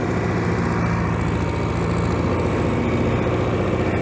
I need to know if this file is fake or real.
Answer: real